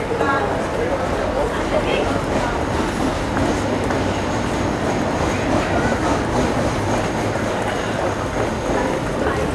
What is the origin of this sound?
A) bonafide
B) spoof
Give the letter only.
A